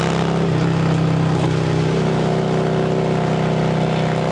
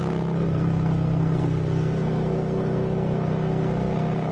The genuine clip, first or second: first